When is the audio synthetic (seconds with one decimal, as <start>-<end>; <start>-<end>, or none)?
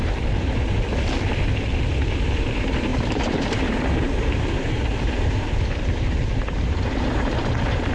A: 2.9-7.9